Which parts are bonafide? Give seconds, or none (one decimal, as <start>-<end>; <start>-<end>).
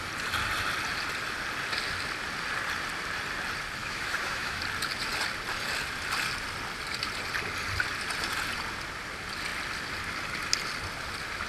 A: 0.0-3.8; 4.6-11.5